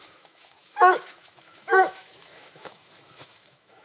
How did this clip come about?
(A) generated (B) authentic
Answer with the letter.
A